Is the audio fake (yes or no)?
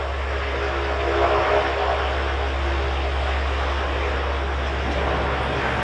no